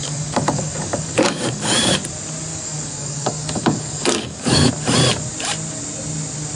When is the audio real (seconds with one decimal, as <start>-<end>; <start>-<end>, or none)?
1.9-2.5; 4.7-6.6